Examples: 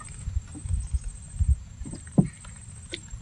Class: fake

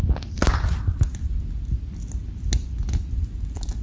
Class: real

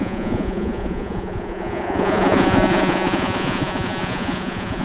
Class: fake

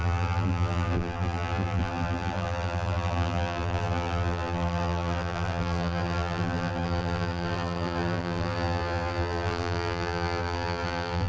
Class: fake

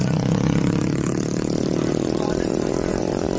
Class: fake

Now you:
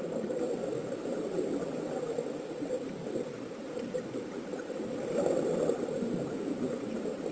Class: real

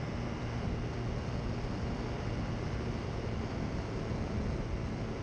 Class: real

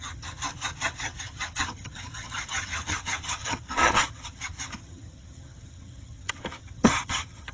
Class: fake